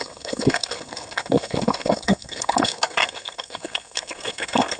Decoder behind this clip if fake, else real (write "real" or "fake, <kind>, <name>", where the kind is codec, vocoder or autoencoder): fake, codec, SNAC